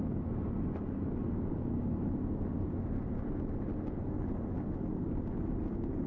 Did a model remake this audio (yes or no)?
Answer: no